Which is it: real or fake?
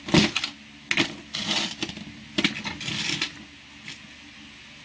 real